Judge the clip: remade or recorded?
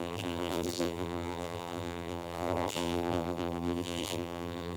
remade